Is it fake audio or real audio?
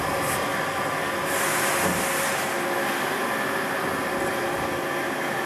real